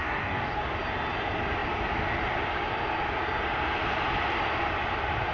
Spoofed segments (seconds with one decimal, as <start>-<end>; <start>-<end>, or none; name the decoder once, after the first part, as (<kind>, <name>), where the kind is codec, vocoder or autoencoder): 0.0-0.6 (codec, DAC)